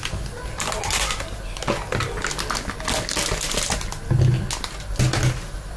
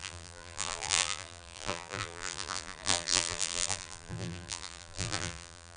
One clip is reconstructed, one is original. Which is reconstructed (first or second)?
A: second